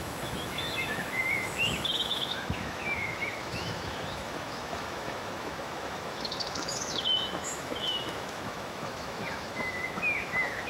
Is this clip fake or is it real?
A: fake